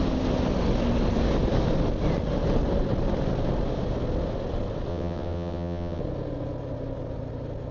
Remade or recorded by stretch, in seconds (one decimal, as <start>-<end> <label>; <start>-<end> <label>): 0.0-4.9 recorded; 4.9-6.0 remade; 6.0-7.7 recorded